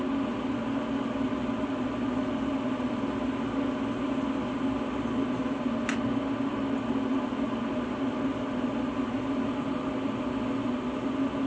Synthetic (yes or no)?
no